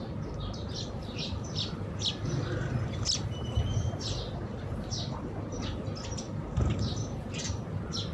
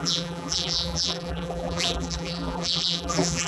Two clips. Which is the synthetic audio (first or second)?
second